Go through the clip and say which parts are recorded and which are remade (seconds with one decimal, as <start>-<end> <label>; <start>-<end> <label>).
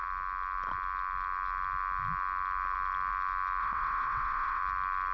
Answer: 0.0-3.6 recorded; 3.6-4.6 remade; 4.6-5.1 recorded